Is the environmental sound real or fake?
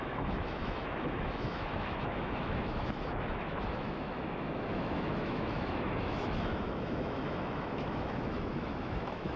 fake